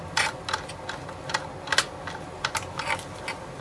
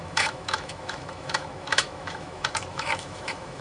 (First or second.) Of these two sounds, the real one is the first